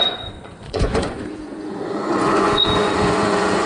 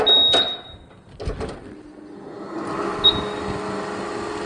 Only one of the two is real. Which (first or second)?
second